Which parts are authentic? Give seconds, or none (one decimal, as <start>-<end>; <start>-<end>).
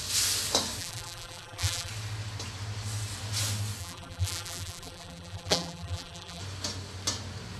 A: 0.0-0.8; 1.9-3.8; 6.4-7.6